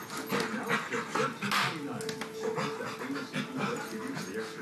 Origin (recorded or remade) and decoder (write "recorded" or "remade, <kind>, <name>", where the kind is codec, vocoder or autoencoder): recorded